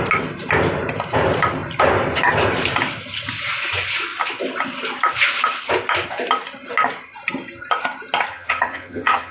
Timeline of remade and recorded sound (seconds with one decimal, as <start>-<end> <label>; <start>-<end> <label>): 0.0-8.3 recorded; 8.3-9.3 remade